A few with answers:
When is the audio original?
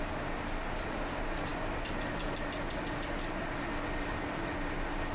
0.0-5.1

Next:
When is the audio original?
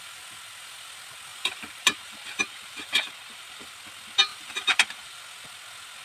0.0-1.3; 3.7-4.3; 5.2-6.0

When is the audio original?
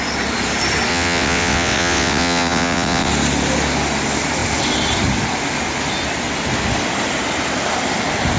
0.0-0.9; 3.1-8.4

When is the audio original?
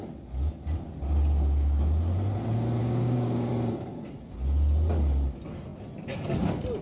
0.0-2.8; 3.5-6.8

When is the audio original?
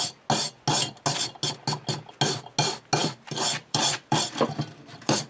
0.0-3.0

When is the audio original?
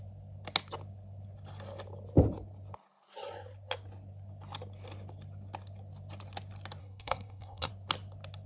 0.0-6.8; 7.7-8.5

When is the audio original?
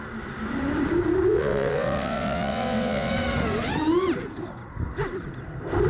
0.0-1.3; 3.1-5.9